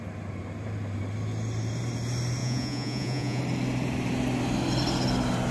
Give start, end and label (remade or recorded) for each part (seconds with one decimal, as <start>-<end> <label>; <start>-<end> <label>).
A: 0.0-2.4 recorded; 2.4-3.4 remade; 3.4-5.5 recorded